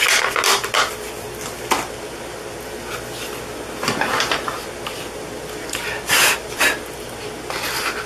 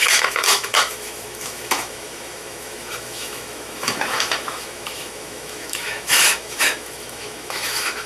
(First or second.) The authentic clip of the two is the first